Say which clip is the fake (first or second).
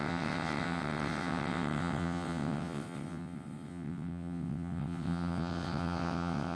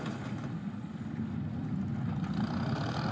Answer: first